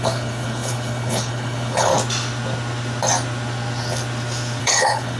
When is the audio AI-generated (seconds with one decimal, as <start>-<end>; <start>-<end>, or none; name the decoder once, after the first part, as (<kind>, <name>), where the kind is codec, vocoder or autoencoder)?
0.0-1.9 (codec, HILCodec); 4.6-5.2